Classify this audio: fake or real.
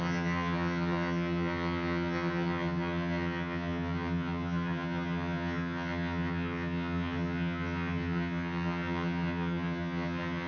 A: fake